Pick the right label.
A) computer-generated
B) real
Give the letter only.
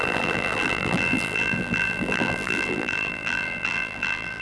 A